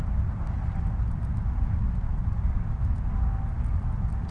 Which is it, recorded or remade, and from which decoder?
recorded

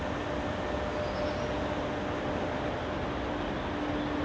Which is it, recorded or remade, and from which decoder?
recorded